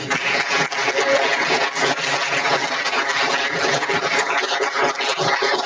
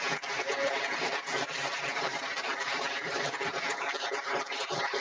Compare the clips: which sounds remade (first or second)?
second